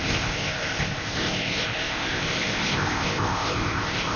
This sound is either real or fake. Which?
fake